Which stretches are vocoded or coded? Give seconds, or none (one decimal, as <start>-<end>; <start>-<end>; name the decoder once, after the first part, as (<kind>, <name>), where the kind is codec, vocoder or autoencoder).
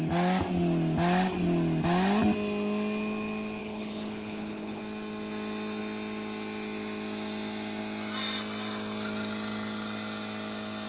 3.6-4.8 (codec, HILCodec)